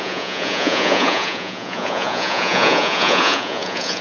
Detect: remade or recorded remade